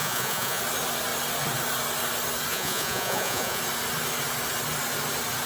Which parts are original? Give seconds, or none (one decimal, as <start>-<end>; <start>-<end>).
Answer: 0.6-2.5; 3.6-5.5